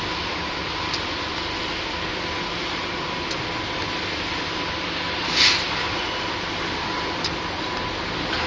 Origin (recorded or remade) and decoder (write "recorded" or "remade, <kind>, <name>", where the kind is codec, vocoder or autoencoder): recorded